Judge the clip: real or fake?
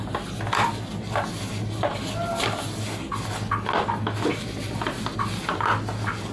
real